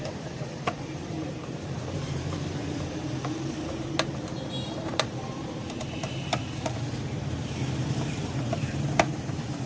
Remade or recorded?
remade